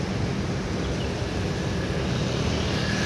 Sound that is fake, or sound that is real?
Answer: real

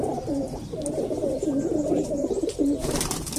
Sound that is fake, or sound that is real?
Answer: fake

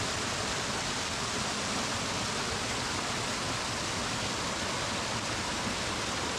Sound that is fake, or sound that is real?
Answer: real